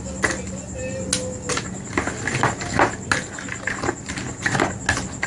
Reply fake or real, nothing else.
real